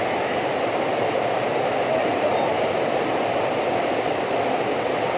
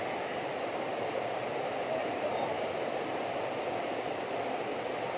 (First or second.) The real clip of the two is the first